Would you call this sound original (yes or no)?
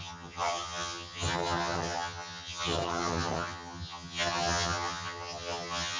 no